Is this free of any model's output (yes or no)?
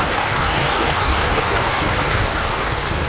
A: no